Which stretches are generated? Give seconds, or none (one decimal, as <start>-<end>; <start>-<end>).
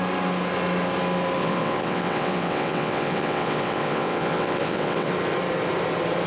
1.4-5.1